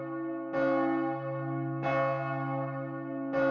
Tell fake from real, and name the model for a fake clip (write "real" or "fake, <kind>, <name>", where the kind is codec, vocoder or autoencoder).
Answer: real